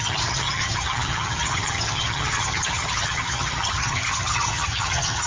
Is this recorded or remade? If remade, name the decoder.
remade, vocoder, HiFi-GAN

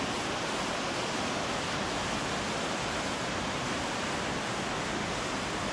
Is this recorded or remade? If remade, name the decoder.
recorded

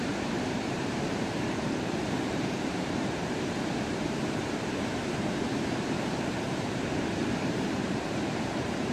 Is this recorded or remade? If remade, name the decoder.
remade, vocoder, BigVGAN v2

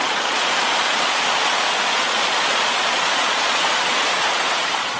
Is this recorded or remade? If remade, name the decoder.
remade, vocoder, Vocos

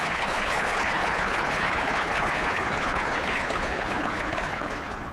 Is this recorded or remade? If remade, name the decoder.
remade, codec, HILCodec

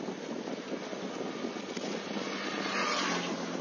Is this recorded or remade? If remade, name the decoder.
recorded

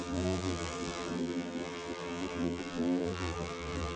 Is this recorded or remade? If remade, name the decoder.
remade, vocoder, BigVGAN v2